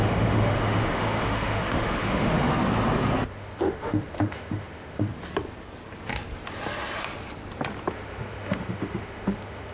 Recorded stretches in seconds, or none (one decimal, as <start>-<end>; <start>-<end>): 2.5-3.3; 5.1-7.9